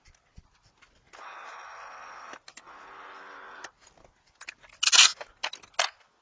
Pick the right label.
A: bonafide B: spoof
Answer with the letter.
A